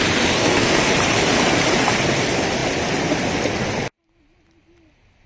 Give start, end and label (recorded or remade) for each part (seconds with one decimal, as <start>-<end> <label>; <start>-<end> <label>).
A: 0.0-0.4 recorded; 0.4-0.9 remade; 0.9-5.3 recorded